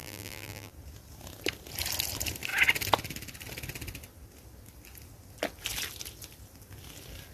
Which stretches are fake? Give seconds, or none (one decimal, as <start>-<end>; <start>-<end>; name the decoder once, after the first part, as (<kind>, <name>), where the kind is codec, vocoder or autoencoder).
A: 0.0-0.7 (vocoder, BigVGAN v2)